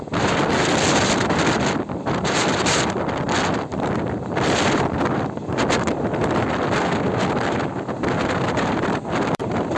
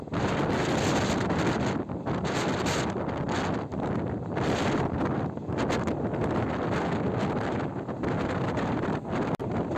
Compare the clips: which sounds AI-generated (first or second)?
first